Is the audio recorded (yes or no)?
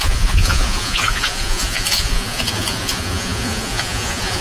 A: no